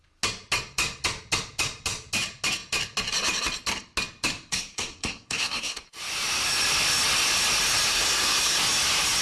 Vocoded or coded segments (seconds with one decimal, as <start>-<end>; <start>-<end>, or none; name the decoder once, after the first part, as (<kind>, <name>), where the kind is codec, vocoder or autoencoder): 4.5-6.0 (codec, SNAC); 7.9-8.6